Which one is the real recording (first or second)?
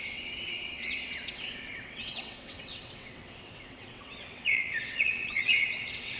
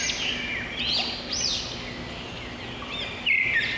second